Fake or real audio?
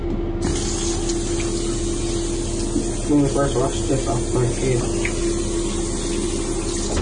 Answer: real